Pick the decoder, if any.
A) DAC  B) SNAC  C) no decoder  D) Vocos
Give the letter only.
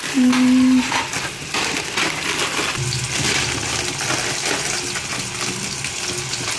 C